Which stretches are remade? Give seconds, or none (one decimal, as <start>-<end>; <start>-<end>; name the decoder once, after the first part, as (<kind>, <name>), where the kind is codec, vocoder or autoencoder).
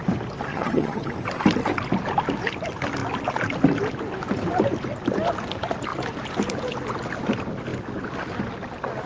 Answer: 0.5-1.1 (vocoder, HiFi-GAN)